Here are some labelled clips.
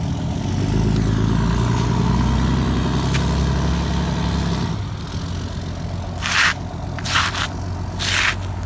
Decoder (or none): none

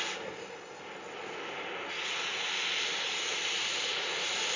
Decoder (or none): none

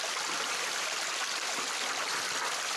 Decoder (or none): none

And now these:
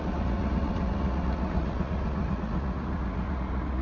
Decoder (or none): vocoder, Vocos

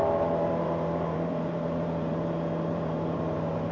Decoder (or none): vocoder, BigVGAN v2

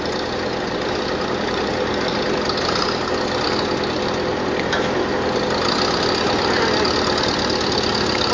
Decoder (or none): none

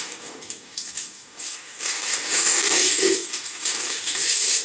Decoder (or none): codec, DAC